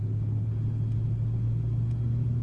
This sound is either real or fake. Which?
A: real